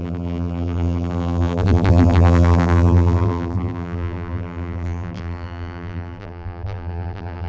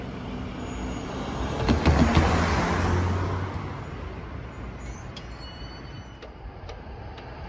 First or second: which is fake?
first